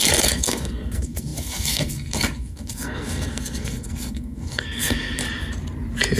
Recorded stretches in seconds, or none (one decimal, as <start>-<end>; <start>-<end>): 5.2-6.2